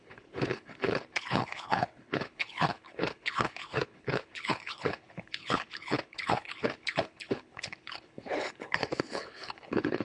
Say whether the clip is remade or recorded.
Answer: remade